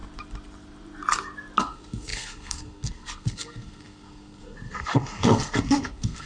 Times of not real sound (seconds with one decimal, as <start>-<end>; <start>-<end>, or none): 1.6-6.3